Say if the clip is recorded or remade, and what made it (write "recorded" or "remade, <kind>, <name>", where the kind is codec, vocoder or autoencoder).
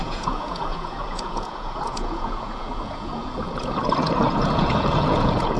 remade, vocoder, Vocos